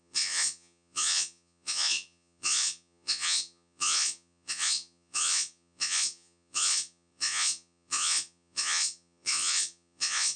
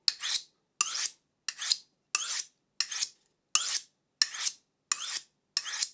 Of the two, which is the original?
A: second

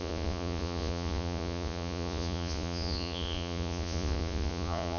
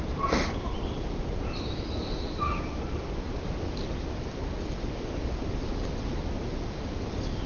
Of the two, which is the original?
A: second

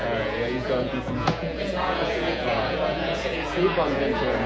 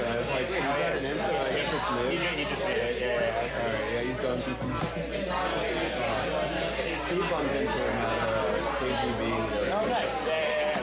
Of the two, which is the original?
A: second